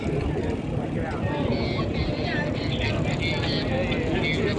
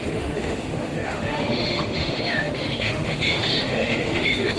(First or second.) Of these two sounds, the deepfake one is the second